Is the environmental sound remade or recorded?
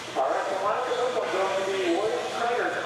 recorded